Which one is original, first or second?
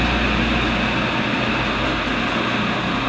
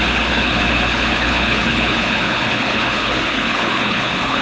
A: first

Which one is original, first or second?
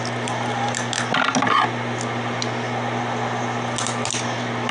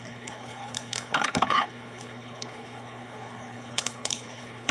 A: first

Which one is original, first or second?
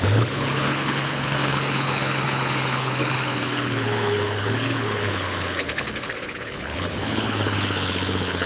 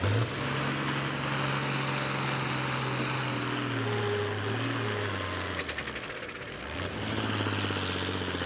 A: second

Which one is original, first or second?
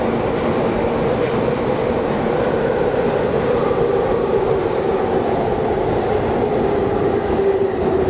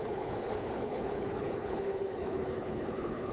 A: first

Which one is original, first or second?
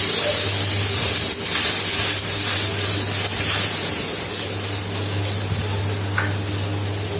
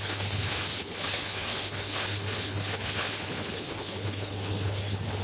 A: first